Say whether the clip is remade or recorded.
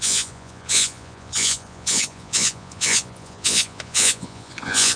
remade